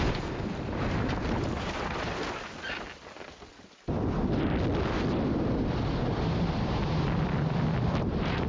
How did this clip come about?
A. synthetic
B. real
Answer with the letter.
B